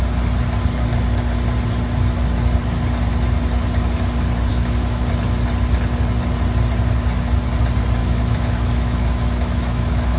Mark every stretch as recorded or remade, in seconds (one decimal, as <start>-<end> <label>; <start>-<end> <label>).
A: 0.0-4.5 recorded; 4.5-5.1 remade; 5.1-8.0 recorded; 8.0-10.2 remade